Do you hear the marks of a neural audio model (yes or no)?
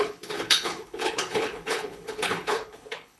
yes